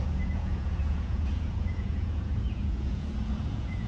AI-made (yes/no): yes